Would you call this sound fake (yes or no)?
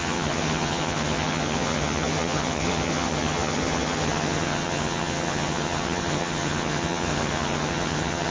yes